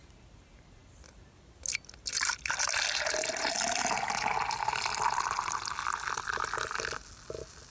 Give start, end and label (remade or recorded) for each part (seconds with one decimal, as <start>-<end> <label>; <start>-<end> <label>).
0.0-7.7 recorded

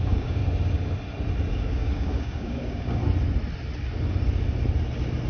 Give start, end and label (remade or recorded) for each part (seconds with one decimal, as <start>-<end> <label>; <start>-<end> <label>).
0.0-0.4 remade; 0.4-1.5 recorded; 1.5-3.0 remade; 3.0-5.3 recorded

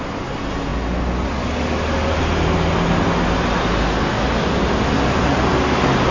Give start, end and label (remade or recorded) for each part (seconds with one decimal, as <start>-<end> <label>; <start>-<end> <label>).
0.0-6.1 recorded